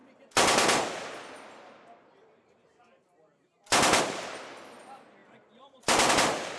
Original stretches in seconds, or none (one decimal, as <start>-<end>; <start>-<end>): 0.0-6.6